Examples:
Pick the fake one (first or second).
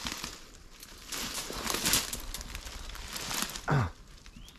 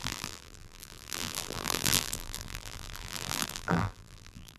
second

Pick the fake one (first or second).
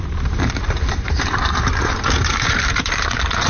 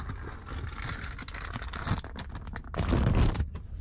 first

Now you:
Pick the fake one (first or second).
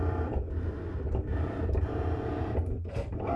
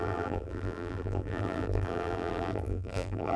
second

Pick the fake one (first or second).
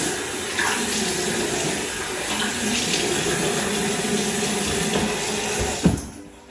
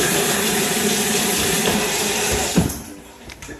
second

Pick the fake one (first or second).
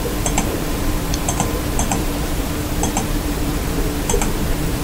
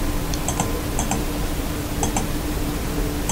first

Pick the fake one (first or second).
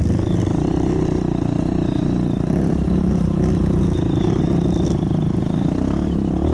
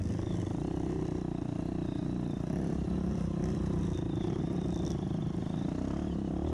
second